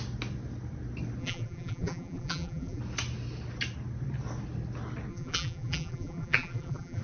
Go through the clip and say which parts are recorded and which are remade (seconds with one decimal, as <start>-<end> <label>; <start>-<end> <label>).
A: 0.0-1.2 recorded; 1.2-2.8 remade; 2.8-5.1 recorded; 5.1-7.0 remade